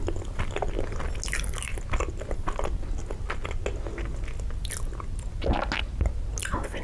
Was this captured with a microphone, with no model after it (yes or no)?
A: yes